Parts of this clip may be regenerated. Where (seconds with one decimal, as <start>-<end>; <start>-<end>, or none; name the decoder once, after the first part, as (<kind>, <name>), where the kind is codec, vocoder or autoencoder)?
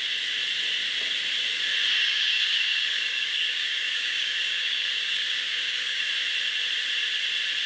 2.0-6.0 (codec, DAC)